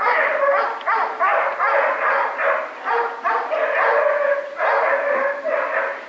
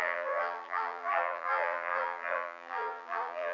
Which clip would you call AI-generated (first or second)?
second